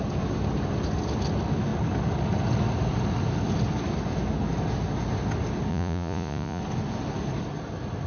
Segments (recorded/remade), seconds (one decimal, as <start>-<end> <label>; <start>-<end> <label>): 0.0-5.7 recorded; 5.7-6.6 remade; 6.6-8.1 recorded